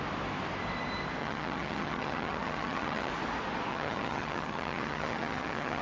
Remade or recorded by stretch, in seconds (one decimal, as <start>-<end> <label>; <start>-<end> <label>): 0.0-1.2 recorded; 1.2-3.1 remade; 3.1-3.7 recorded; 3.7-5.8 remade